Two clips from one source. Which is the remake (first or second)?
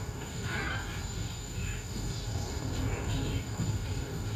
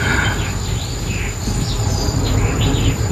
first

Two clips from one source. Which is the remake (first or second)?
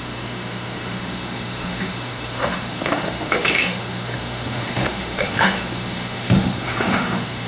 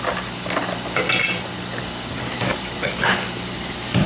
first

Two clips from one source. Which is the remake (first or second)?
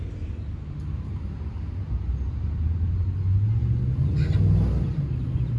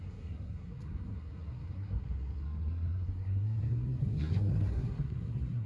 second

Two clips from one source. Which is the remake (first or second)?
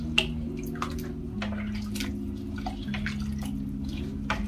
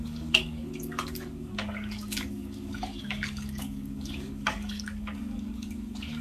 second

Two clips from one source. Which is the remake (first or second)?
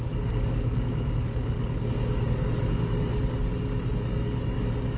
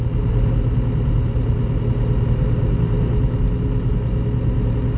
first